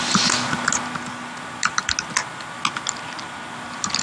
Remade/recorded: recorded